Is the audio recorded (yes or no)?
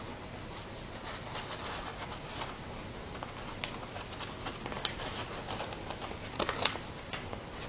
yes